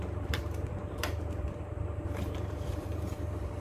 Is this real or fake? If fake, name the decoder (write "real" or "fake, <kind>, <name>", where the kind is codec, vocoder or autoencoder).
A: fake, vocoder, BigVGAN v2